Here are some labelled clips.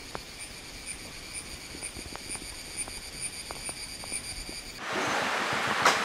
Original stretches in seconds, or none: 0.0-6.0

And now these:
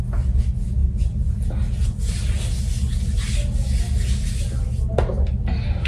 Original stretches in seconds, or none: 0.0-5.9

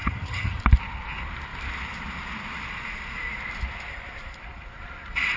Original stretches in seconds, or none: 0.6-5.4

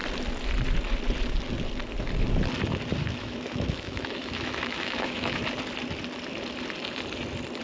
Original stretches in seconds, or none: 0.0-3.0; 5.4-7.6

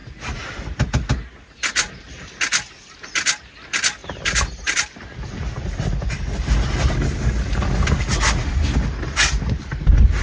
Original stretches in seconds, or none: 0.0-4.0; 6.1-10.2

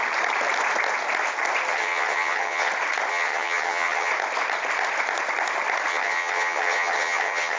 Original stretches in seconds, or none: 0.0-1.7; 2.7-3.1; 4.1-5.9

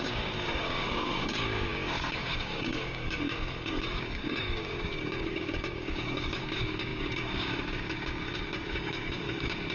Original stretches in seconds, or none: none